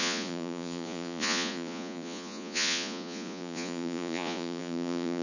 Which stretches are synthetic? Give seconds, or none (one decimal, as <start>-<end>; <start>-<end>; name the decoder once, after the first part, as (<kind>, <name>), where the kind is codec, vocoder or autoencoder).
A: 0.0-5.2 (vocoder, Vocos)